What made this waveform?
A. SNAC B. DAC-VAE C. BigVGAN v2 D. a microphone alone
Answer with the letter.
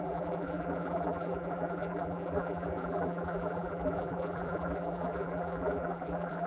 C